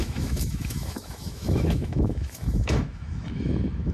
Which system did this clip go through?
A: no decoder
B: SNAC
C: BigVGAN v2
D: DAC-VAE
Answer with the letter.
D